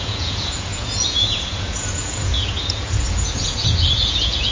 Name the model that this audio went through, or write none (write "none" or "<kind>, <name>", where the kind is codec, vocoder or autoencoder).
vocoder, Vocos